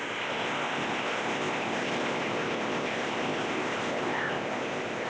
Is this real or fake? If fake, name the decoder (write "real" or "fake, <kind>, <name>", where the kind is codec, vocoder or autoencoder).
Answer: fake, codec, ZipCodec